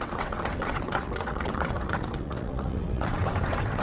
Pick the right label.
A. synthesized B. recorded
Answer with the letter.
A